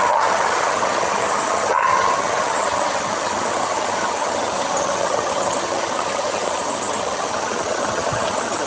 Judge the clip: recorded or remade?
remade